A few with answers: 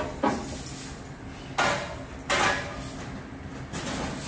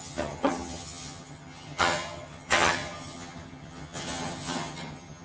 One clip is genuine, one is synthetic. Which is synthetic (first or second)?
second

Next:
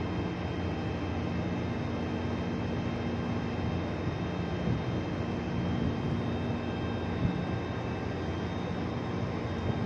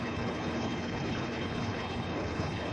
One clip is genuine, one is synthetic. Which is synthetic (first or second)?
second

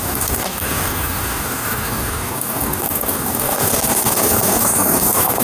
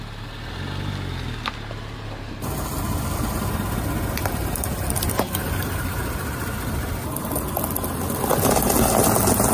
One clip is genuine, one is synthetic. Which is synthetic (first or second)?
first